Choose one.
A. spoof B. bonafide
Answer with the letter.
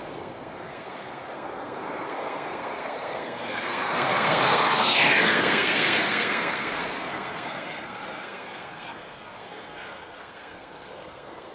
A